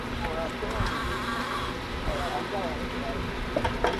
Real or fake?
real